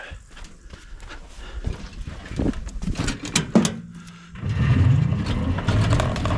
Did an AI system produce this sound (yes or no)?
no